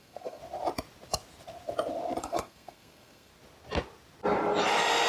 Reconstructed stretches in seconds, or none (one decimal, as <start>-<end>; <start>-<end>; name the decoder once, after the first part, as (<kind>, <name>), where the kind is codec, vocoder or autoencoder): 0.0-0.4 (codec, SNAC); 2.2-3.3